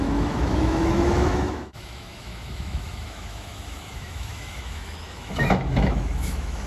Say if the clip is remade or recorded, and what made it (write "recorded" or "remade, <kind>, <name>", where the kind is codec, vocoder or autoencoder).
remade, autoencoder, DAC-VAE